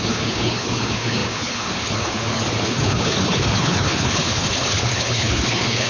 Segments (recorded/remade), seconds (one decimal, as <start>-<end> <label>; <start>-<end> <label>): 0.0-5.9 remade